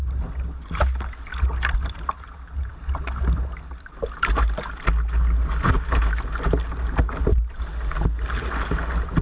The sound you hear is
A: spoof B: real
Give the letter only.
B